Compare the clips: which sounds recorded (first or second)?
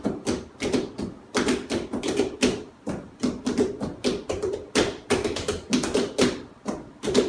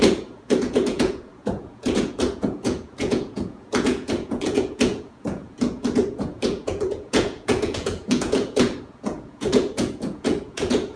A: first